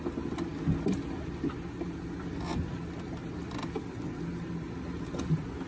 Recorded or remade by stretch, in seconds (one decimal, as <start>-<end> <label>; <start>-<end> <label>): 0.0-5.7 recorded